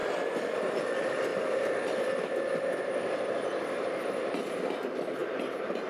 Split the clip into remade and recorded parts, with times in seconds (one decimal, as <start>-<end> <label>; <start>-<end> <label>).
0.0-1.3 recorded; 1.3-4.0 remade; 4.0-5.2 recorded; 5.2-5.9 remade